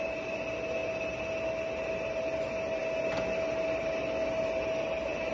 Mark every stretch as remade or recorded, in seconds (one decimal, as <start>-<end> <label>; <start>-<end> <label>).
0.0-5.3 recorded